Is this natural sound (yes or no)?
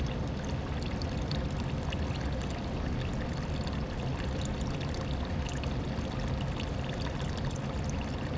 yes